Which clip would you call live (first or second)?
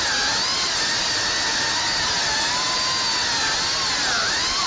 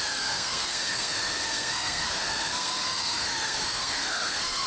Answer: first